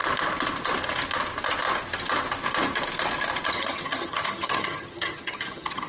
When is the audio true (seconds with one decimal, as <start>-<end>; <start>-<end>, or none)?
0.0-3.5